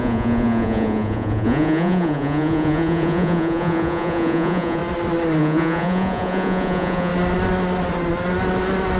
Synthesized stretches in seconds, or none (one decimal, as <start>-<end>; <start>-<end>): 0.0-4.8; 5.4-7.1